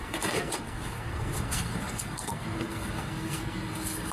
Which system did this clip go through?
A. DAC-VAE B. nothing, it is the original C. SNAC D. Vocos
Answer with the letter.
C